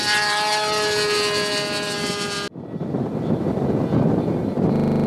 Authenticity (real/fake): real